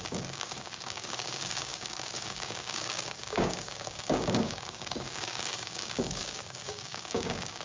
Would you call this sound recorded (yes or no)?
no